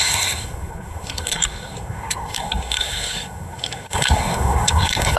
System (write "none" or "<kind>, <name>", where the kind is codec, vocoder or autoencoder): codec, SNAC